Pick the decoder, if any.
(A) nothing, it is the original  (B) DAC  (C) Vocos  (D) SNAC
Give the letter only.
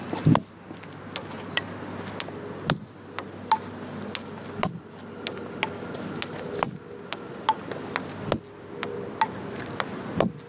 A